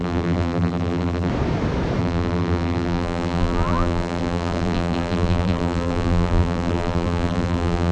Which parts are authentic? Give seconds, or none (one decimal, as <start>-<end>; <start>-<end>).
1.3-2.0